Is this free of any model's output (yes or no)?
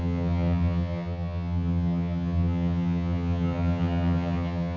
no